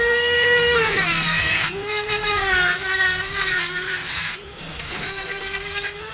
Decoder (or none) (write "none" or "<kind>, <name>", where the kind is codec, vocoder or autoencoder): codec, SNAC